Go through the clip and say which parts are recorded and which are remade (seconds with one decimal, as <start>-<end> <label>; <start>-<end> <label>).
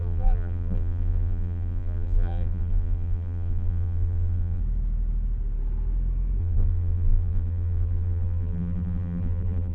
0.0-4.6 remade; 4.6-6.4 recorded; 6.4-9.7 remade